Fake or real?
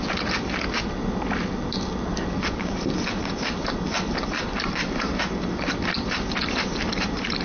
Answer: real